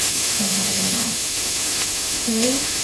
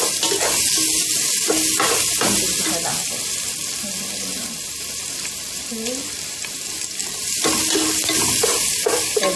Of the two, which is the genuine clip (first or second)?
second